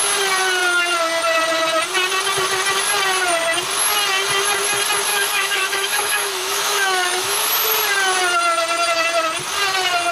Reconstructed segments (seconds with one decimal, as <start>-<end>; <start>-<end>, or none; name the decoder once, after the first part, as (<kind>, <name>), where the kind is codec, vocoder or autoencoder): 5.1-7.5 (autoencoder, DAC-VAE)